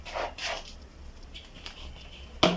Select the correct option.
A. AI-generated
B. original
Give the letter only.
B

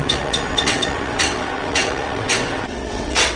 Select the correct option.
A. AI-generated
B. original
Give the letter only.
A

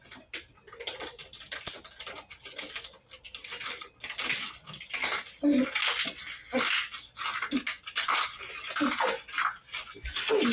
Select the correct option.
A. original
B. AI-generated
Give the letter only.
A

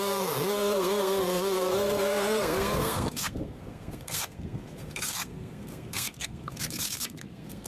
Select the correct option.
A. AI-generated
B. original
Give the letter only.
A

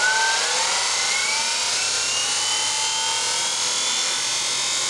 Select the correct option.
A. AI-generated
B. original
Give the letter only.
B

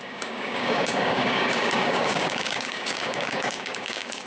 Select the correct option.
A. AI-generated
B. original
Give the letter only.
A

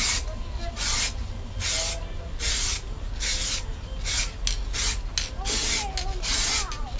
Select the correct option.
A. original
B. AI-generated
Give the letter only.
A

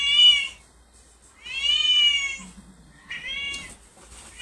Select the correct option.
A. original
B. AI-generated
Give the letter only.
A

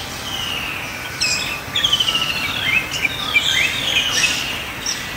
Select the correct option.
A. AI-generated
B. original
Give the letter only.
B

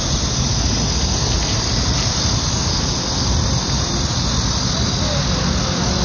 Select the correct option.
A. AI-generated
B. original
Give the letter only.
B